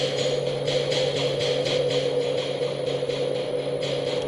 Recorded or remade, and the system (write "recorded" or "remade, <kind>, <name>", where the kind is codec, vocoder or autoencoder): recorded